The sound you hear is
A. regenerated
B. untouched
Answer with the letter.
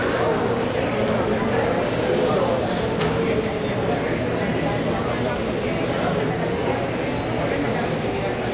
B